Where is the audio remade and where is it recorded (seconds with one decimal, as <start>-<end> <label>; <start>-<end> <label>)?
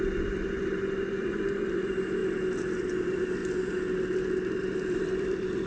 0.0-2.2 remade; 2.2-2.9 recorded; 2.9-3.4 remade; 3.4-4.9 recorded; 4.9-5.7 remade